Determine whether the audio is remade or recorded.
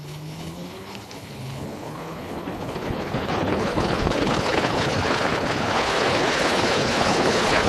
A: remade